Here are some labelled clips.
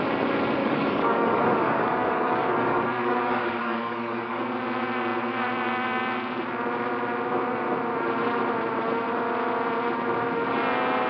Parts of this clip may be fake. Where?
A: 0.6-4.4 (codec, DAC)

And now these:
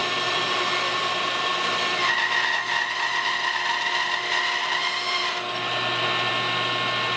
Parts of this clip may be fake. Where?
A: none

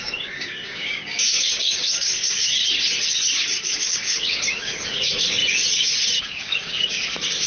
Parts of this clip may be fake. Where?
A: 0.0-2.4 (codec, DAC); 3.6-5.4; 6.2-7.5